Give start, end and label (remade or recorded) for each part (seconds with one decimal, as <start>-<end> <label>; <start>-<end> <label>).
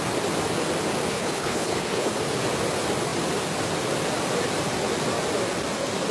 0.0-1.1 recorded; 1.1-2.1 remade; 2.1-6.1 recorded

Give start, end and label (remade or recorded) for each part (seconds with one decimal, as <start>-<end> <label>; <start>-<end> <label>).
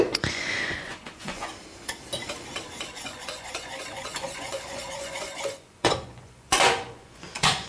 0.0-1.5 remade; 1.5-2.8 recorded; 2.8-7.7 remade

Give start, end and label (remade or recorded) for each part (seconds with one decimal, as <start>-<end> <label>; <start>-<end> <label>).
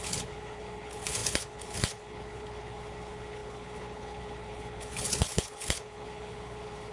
0.0-6.9 remade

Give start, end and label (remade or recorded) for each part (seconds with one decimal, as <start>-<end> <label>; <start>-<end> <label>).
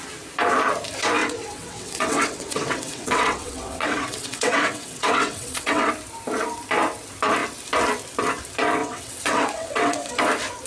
0.0-1.2 recorded; 1.2-5.9 remade; 5.9-8.8 recorded; 8.8-10.2 remade; 10.2-10.7 recorded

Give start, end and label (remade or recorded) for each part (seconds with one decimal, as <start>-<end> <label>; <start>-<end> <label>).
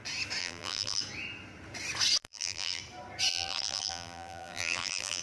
0.0-0.4 recorded; 0.4-1.0 remade; 1.0-2.2 recorded; 2.2-2.8 remade; 2.8-3.3 recorded; 3.3-5.2 remade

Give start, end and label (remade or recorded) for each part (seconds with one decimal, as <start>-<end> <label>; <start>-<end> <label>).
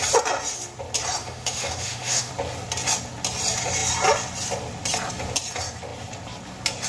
0.0-1.2 recorded; 1.2-2.3 remade; 2.3-6.9 recorded